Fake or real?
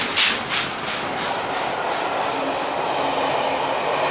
real